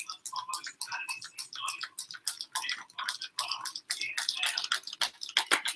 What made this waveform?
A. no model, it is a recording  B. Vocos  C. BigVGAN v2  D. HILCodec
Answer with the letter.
A